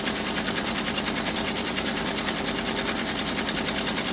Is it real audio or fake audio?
fake